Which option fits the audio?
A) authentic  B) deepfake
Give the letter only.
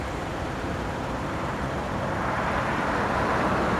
B